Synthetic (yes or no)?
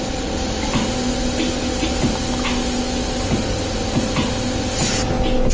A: no